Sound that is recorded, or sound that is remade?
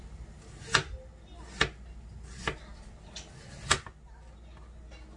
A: recorded